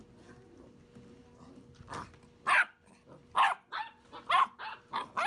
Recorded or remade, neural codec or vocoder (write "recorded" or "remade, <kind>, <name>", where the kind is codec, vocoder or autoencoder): recorded